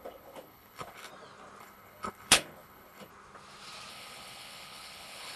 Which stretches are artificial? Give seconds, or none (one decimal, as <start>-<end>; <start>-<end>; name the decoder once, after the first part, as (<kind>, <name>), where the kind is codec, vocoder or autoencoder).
0.0-1.1 (codec, HILCodec); 1.6-3.1; 3.9-5.4